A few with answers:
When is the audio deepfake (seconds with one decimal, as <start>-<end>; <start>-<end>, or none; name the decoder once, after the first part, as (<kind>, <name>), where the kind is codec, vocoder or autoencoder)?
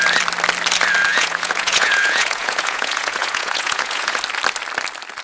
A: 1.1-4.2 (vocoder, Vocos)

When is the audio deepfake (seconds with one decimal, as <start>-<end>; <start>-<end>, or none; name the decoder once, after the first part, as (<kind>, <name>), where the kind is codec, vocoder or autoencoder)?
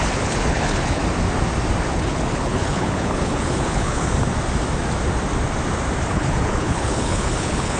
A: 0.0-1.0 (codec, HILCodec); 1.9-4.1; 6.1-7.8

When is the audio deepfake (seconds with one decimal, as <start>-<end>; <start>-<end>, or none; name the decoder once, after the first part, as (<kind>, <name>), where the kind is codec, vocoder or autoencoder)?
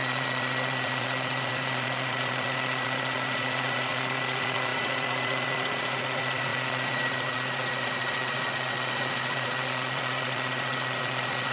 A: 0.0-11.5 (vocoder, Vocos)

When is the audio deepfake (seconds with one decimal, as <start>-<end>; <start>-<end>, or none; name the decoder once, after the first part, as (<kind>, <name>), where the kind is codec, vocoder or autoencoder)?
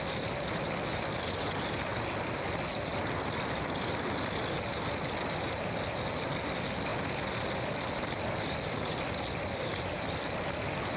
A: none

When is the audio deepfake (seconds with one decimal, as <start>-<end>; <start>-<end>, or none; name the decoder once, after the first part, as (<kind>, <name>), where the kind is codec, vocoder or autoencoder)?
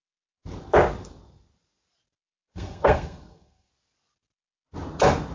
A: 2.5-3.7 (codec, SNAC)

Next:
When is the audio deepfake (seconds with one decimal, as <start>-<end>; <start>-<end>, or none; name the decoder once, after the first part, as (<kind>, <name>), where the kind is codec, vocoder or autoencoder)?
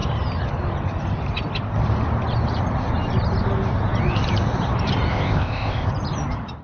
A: 5.1-5.9 (codec, ZipCodec)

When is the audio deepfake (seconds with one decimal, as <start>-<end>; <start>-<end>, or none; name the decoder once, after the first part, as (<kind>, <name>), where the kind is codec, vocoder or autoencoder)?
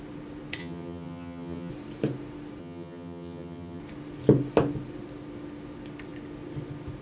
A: 0.6-1.7 (vocoder, HiFi-GAN); 2.6-3.8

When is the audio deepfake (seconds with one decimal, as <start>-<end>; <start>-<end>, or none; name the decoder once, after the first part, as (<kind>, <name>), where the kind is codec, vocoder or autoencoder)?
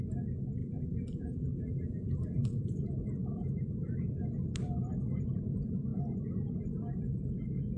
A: 0.6-2.6 (vocoder, BigVGAN v2)